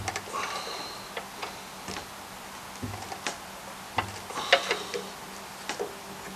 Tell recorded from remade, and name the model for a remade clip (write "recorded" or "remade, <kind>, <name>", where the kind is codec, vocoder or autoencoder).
recorded